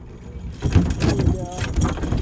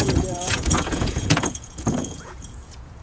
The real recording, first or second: first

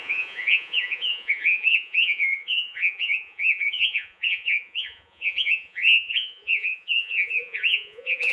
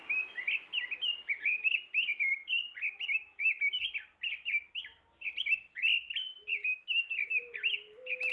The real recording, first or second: second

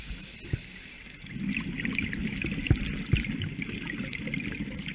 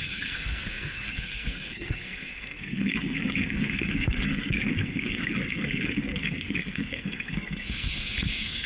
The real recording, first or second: first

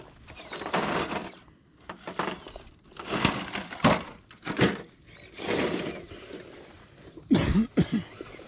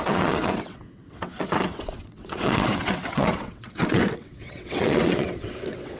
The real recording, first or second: first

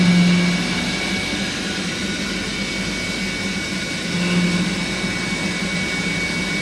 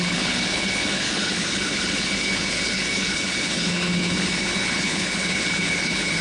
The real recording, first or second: first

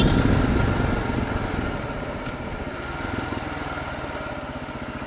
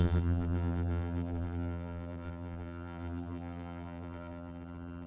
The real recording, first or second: first